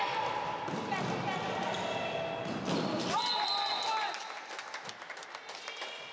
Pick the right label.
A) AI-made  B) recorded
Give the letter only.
B